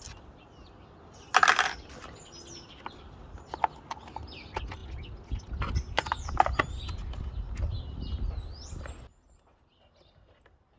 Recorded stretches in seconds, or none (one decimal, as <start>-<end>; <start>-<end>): 0.0-10.8